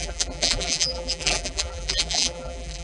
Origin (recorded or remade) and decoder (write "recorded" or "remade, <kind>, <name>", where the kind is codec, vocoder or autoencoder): remade, vocoder, BigVGAN v2